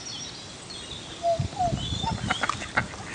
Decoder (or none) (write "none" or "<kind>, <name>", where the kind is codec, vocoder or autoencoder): none